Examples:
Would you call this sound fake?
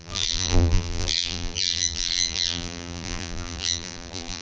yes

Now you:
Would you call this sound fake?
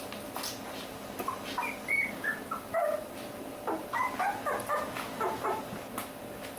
no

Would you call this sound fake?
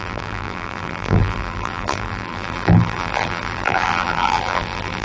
yes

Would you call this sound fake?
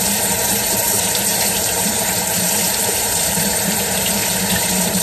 yes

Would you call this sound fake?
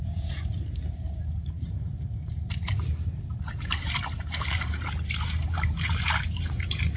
yes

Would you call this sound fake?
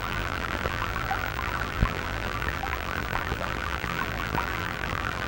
yes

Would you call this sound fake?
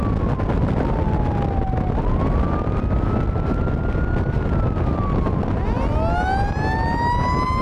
no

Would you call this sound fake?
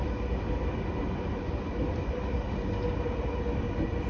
no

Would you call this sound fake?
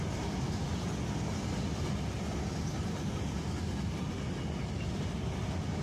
no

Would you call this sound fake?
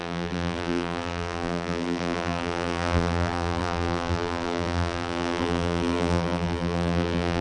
yes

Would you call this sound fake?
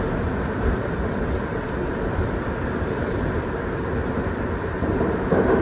yes